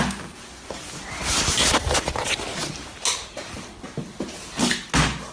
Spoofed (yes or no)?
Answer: no